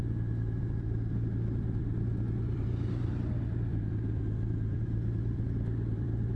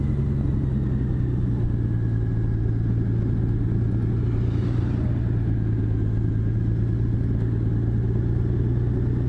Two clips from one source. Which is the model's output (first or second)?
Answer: first